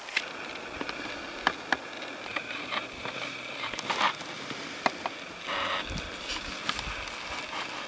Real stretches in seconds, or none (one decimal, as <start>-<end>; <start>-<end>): 0.0-2.3; 5.0-7.9